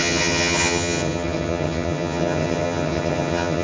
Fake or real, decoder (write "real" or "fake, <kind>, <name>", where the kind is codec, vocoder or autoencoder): fake, vocoder, HiFi-GAN